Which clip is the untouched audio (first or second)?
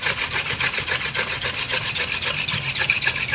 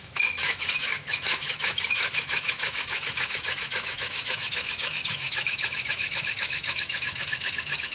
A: first